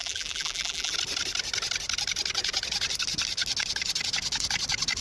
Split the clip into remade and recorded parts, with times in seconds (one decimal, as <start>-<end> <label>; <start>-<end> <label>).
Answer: 0.0-0.9 remade; 0.9-5.0 recorded